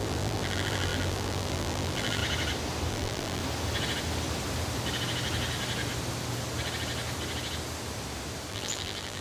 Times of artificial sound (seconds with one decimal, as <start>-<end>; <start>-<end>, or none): 0.0-2.2; 2.9-3.4; 8.5-9.2